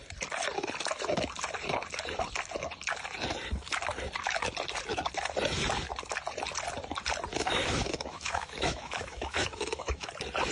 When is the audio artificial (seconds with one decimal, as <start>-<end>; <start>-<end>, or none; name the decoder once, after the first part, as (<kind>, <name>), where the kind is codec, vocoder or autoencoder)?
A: 7.3-10.1 (autoencoder, DAC-VAE)

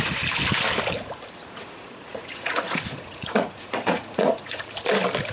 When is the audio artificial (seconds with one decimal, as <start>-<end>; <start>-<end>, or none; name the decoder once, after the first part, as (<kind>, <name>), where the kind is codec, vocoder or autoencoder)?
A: 1.4-4.6 (vocoder, Vocos)